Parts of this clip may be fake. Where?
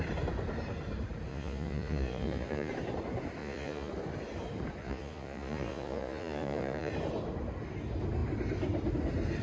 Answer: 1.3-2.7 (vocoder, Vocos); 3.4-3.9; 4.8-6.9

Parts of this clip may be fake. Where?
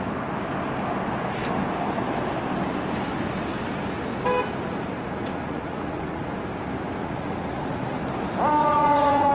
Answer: 5.3-6.3 (vocoder, Vocos); 7.0-8.0; 8.6-9.3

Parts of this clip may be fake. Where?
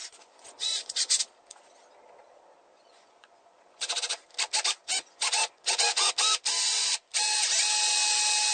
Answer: 0.0-1.2 (vocoder, Vocos); 2.7-4.2; 4.8-6.1